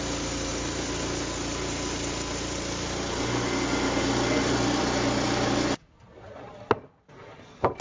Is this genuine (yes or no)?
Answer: yes